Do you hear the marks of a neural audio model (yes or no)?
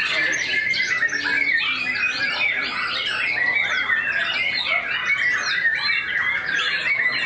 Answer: no